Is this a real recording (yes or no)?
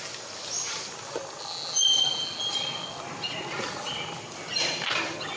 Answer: yes